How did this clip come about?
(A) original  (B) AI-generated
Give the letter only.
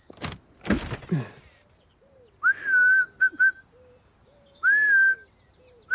A